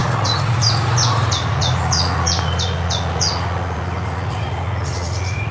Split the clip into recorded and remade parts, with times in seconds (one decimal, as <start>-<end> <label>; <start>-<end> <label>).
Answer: 0.0-5.5 remade